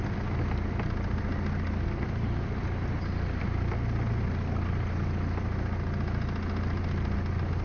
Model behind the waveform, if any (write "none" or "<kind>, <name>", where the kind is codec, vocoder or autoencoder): none